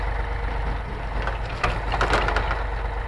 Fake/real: real